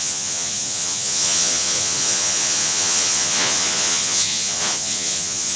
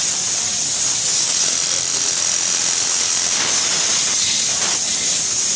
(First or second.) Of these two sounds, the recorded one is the second